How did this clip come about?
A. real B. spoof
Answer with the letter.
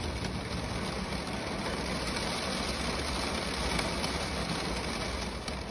A